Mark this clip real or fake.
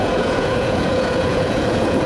fake